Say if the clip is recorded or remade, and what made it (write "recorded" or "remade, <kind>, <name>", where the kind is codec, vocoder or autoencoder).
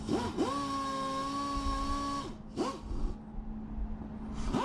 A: recorded